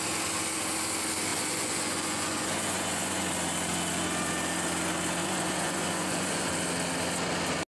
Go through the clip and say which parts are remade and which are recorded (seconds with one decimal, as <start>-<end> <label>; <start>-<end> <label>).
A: 0.0-1.3 recorded; 1.3-3.3 remade; 3.3-5.2 recorded; 5.2-6.5 remade; 6.5-7.7 recorded